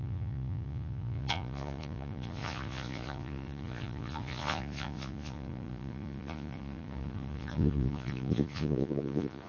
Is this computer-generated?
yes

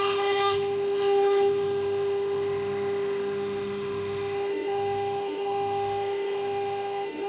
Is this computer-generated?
yes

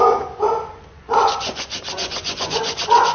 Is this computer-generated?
yes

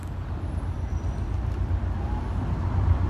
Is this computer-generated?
no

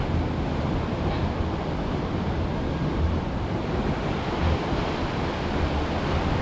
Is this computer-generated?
no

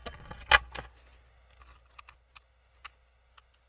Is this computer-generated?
no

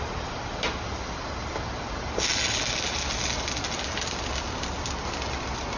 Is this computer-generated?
no